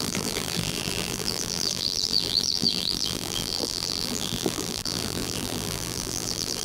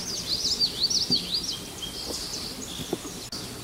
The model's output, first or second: first